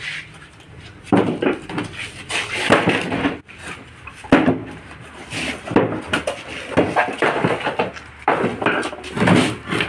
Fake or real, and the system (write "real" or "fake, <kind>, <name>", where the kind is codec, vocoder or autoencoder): real